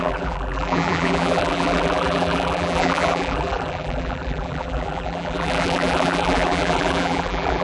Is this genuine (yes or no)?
no